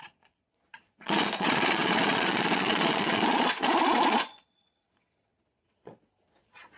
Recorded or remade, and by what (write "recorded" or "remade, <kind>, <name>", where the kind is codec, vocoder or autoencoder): remade, vocoder, Vocos